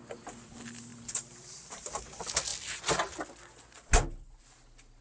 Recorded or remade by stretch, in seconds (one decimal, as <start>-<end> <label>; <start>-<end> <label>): 0.0-0.9 recorded; 0.9-2.0 remade; 2.0-5.0 recorded